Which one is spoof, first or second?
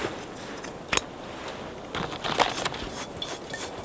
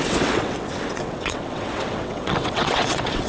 second